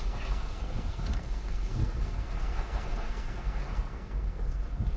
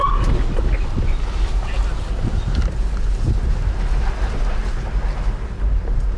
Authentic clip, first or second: second